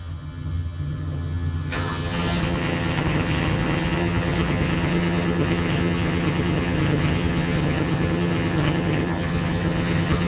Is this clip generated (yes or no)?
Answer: yes